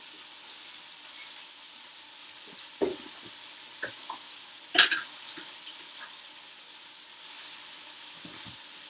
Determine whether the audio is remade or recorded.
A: recorded